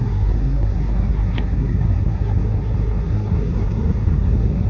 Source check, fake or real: fake